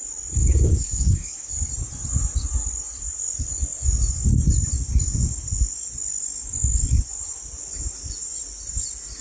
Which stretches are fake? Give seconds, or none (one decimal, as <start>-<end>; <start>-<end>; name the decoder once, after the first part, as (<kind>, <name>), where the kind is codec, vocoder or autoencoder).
0.4-1.5 (codec, DAC)